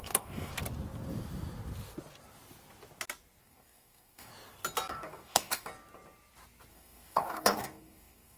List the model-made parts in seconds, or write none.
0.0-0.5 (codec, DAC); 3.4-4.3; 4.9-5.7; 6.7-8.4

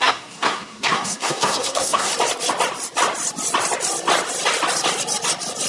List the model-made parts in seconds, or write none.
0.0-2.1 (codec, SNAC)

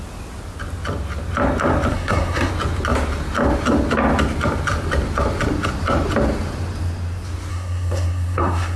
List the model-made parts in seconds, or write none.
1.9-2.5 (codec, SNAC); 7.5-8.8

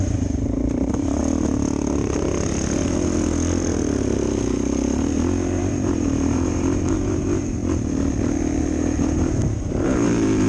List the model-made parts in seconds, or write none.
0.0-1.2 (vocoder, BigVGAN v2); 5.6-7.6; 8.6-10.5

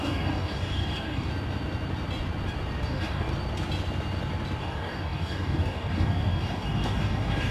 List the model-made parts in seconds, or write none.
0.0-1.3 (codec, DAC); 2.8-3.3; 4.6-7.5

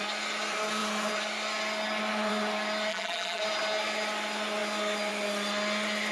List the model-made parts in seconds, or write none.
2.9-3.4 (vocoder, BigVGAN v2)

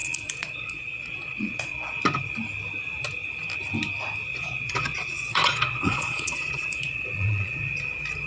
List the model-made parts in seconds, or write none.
0.0-2.0 (vocoder, Vocos); 4.3-7.6

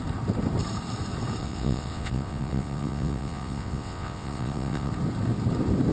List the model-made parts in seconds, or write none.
1.4-4.9 (vocoder, WaveNeXt)